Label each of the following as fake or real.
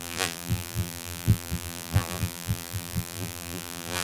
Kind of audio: fake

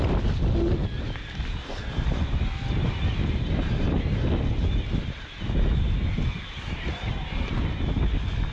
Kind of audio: real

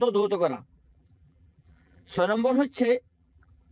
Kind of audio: fake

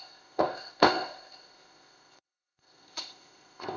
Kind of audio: fake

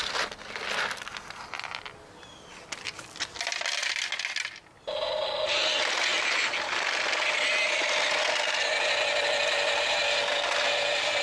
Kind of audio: real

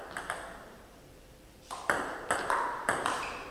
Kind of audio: fake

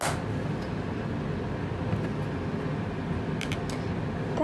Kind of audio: real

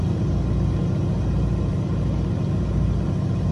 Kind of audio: real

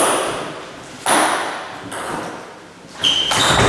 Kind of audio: real